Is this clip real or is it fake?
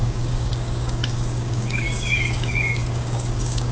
fake